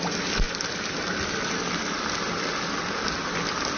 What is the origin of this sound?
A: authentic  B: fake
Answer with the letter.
A